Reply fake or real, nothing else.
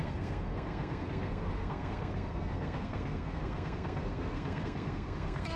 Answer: fake